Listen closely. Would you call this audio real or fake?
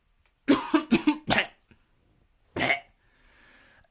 real